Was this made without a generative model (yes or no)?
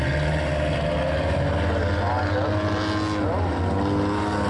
yes